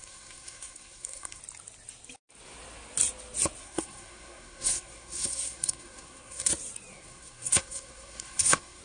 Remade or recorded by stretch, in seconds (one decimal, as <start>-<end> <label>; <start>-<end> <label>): 0.0-1.4 remade; 1.4-3.6 recorded; 3.6-6.5 remade; 6.5-6.9 recorded; 6.9-8.8 remade